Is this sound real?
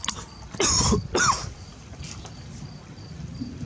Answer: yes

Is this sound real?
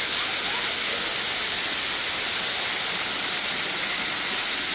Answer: yes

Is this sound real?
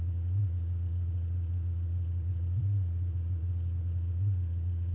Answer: no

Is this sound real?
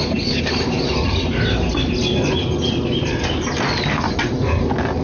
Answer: yes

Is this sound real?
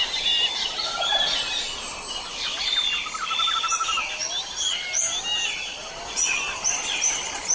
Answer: yes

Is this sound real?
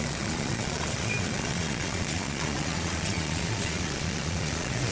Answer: no